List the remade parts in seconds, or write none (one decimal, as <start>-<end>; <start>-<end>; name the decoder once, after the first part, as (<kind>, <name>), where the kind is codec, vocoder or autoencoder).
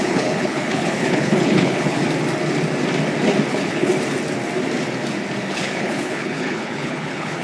0.0-2.0 (codec, HILCodec); 3.5-3.9; 5.5-7.4